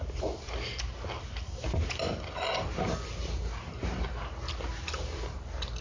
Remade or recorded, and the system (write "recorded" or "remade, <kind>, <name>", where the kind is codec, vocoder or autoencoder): remade, vocoder, BigVGAN v2